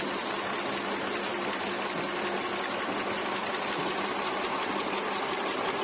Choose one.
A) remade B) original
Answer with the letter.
B